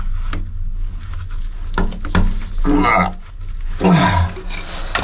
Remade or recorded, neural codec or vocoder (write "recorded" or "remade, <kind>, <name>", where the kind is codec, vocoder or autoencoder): recorded